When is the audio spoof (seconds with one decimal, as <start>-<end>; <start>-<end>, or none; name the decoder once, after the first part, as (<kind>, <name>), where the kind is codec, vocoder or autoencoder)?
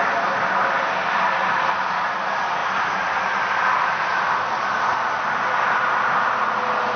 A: none